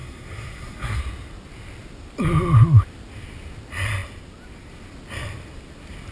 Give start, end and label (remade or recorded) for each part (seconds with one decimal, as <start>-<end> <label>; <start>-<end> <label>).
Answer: 0.0-1.0 remade; 1.0-6.1 recorded